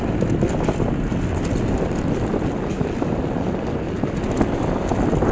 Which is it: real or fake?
real